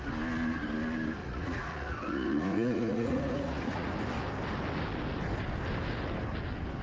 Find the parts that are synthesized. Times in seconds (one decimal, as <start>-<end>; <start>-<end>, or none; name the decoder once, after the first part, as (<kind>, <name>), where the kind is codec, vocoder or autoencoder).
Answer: 1.2-3.9 (vocoder, Vocos)